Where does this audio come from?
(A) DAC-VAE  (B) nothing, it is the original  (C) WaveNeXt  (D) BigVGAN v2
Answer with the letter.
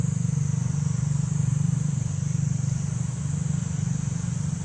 B